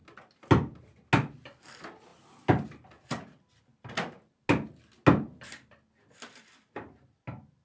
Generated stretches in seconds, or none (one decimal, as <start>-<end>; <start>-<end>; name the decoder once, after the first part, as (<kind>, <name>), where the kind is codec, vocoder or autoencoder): none